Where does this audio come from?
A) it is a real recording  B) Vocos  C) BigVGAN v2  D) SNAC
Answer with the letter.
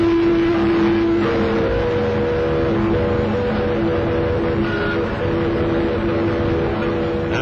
A